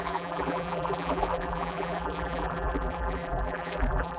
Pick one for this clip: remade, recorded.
remade